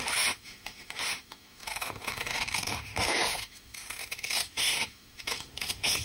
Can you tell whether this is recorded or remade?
remade